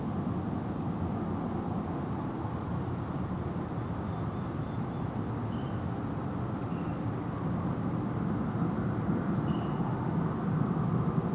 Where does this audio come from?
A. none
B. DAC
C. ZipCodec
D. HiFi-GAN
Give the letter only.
A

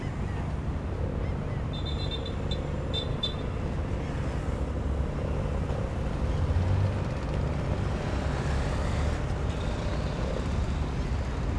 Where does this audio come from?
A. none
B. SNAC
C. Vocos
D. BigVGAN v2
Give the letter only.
A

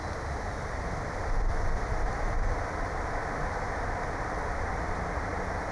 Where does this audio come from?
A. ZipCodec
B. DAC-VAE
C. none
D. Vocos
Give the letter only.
C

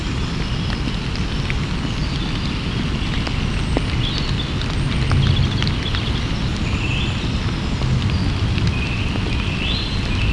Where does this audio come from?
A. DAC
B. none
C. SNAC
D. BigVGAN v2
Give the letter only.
B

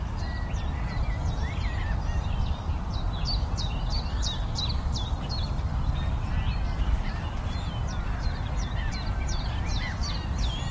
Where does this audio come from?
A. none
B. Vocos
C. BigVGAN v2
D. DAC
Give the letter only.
A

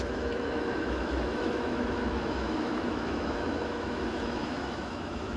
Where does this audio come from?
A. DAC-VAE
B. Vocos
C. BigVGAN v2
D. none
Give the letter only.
A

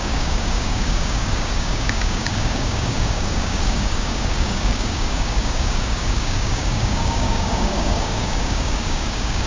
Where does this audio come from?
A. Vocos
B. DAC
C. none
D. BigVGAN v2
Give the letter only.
B